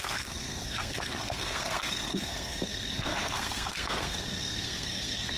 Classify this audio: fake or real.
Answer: fake